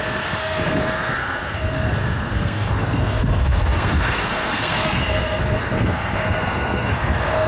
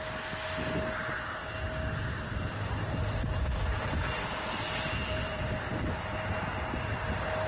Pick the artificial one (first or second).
first